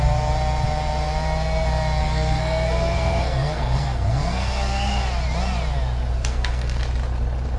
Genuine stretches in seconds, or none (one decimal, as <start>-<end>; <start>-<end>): 0.0-2.0; 5.0-6.2; 6.8-7.6